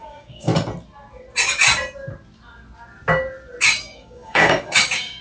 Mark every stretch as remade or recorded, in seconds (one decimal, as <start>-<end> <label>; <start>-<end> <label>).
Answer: 0.0-0.5 remade; 0.5-3.6 recorded; 3.6-5.2 remade